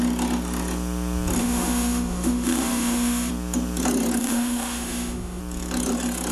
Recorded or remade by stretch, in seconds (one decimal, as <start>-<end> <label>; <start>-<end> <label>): 0.0-1.4 recorded; 1.4-3.3 remade; 3.3-4.2 recorded; 4.2-5.4 remade; 5.4-6.3 recorded